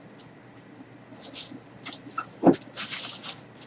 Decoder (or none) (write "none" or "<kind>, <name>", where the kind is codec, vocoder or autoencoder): none